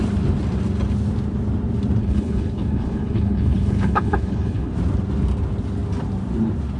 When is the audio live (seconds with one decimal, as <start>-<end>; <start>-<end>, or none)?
0.0-2.0; 4.7-6.8